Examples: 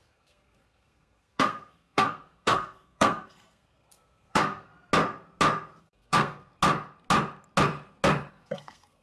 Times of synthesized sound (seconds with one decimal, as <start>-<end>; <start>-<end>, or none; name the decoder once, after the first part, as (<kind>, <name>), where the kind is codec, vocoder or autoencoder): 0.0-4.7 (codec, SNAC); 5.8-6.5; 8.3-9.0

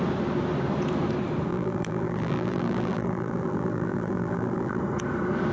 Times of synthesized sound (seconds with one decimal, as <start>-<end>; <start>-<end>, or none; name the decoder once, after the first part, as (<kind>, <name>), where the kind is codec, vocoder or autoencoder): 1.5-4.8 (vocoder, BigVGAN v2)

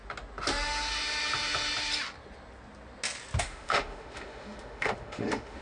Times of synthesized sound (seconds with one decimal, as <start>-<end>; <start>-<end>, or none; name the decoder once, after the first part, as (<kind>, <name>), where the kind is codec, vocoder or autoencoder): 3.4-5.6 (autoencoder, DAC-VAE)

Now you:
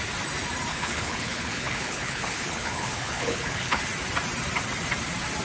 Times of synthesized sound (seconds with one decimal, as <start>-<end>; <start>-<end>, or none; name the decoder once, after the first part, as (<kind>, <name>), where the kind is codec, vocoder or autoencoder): 0.7-3.8 (codec, HILCodec)

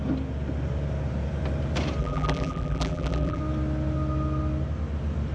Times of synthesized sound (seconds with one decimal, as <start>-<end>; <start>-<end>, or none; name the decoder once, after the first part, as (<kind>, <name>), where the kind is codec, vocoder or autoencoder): 2.0-3.4 (vocoder, BigVGAN v2)

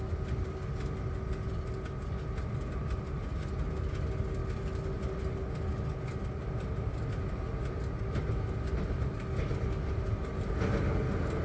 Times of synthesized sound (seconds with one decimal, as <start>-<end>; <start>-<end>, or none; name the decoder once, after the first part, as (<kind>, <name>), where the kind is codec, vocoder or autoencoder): none

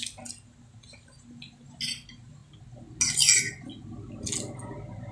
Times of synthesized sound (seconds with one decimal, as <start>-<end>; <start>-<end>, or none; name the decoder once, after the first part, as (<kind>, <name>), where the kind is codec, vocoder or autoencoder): none